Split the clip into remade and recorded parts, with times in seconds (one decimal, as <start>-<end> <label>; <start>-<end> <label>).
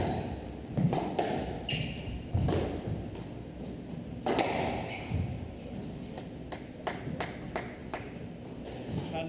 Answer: 0.0-9.3 recorded